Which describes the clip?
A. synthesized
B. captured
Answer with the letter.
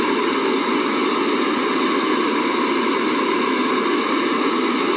B